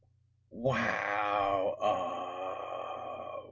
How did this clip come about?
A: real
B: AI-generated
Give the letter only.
A